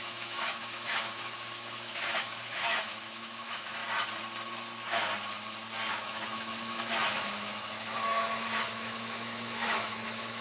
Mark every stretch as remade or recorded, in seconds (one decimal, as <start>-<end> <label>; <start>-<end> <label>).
0.0-3.8 remade; 3.8-5.9 recorded; 5.9-10.4 remade